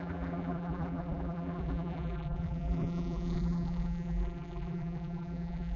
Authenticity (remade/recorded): remade